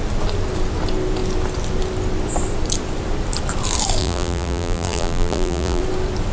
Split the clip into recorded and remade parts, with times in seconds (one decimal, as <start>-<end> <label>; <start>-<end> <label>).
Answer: 0.0-4.0 recorded; 4.0-5.8 remade; 5.8-6.3 recorded